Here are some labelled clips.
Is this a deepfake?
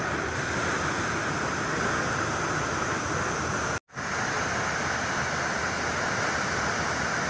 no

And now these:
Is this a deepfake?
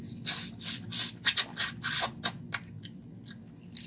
no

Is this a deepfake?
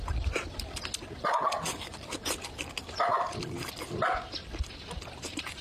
no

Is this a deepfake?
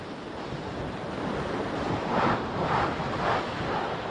yes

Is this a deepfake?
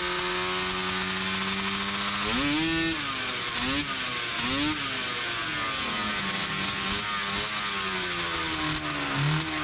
no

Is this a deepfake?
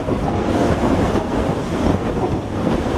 yes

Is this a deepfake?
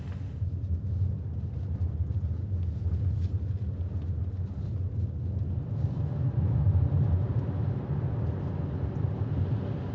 no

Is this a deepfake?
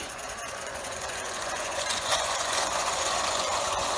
yes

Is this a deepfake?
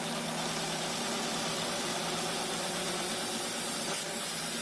no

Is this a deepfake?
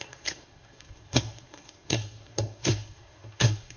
yes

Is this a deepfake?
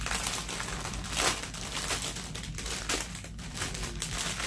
no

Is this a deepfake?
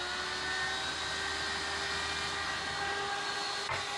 no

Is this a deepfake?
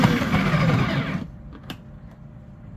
no